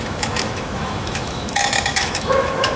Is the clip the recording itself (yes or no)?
no